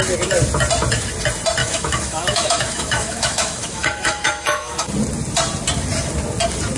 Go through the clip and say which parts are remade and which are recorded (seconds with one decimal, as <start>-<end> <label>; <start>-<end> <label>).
0.0-1.6 recorded; 1.6-4.9 remade; 4.9-6.8 recorded